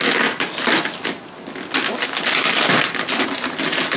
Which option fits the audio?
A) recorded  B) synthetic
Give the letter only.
A